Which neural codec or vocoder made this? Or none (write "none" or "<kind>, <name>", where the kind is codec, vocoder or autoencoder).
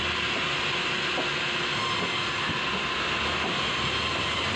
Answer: none